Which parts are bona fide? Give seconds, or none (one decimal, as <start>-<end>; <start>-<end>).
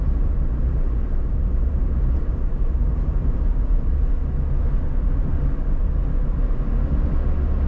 3.9-7.7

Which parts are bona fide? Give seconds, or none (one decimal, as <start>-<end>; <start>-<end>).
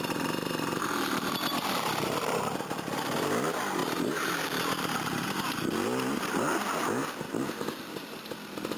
0.0-3.8; 4.4-7.0; 8.3-8.8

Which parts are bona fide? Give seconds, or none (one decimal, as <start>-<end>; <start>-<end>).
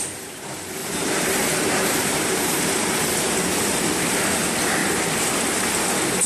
0.0-0.8; 4.2-4.8; 5.3-6.3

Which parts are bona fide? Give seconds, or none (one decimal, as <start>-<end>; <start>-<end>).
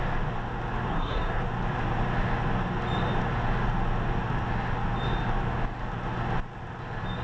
0.0-0.9; 1.4-7.2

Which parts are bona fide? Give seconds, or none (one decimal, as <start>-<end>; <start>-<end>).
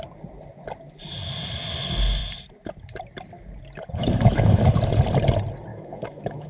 0.0-4.0; 4.6-5.7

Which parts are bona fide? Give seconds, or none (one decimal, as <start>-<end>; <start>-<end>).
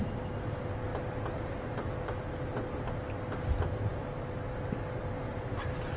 0.0-6.0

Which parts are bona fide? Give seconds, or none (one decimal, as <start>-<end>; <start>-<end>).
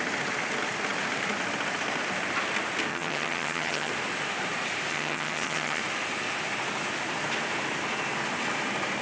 0.0-2.9; 3.9-4.9; 5.8-9.0